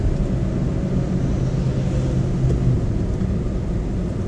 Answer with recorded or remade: recorded